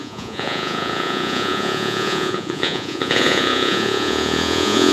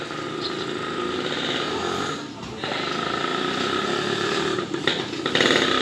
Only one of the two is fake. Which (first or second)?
first